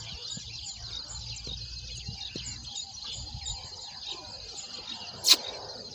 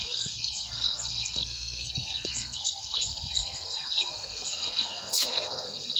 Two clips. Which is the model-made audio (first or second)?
second